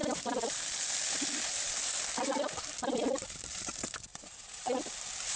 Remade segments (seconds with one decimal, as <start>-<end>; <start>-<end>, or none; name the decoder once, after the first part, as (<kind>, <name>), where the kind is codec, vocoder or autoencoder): 4.1-4.8 (vocoder, Vocos)